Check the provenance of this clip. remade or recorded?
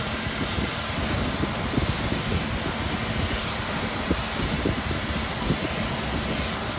recorded